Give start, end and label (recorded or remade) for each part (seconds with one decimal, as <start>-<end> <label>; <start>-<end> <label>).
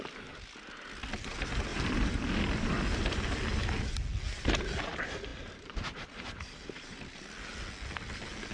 0.0-1.7 recorded; 1.7-2.4 remade; 2.4-5.3 recorded; 5.3-7.3 remade; 7.3-8.5 recorded